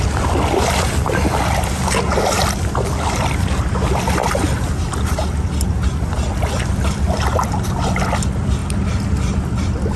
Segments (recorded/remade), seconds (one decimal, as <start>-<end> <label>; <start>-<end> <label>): 0.0-10.0 recorded